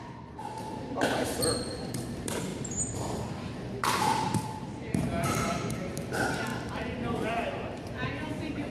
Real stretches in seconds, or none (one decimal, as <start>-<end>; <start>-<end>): 2.5-3.3; 6.5-7.3